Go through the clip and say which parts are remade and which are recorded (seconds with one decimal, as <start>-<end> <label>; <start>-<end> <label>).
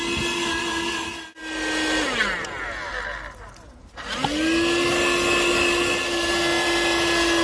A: 0.0-7.4 recorded